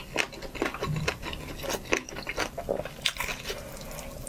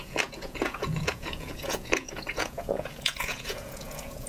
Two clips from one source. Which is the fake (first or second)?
second